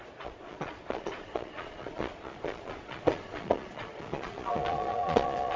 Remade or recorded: remade